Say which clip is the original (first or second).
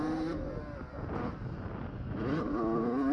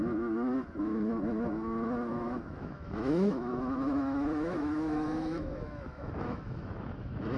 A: first